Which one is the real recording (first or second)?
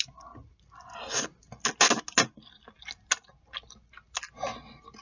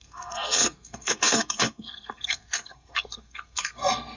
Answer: first